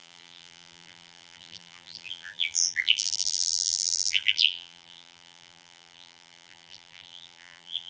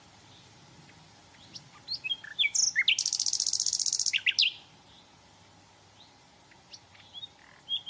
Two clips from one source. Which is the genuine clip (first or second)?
second